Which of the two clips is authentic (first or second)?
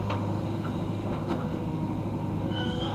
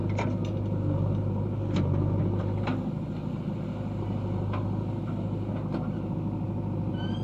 second